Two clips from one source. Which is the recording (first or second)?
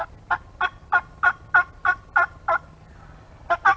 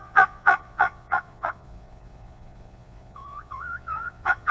first